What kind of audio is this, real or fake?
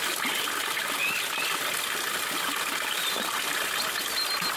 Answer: real